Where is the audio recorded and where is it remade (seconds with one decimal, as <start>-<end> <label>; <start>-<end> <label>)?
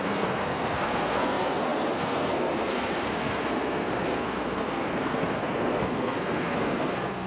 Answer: 0.0-7.3 remade